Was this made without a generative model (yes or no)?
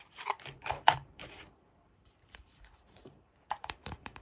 no